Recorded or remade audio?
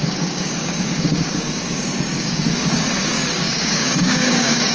remade